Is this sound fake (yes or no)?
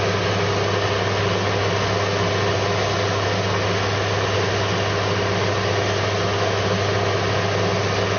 no